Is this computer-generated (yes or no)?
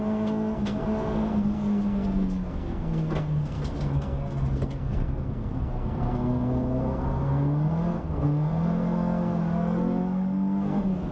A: yes